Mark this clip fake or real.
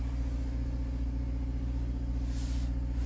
real